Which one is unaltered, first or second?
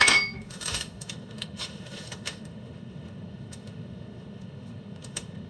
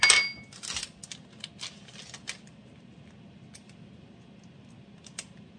second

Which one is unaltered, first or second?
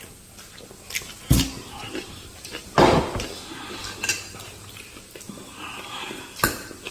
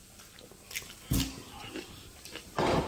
first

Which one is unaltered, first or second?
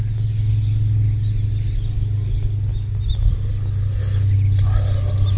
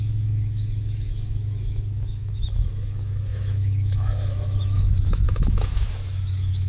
first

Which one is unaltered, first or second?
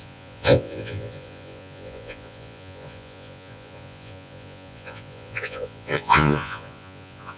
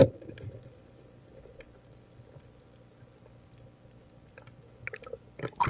second